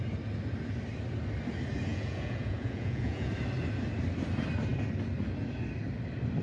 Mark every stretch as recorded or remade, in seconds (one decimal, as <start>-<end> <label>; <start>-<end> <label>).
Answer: 0.0-1.9 recorded; 1.9-3.3 remade; 3.3-6.4 recorded